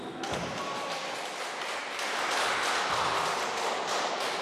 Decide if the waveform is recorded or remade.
recorded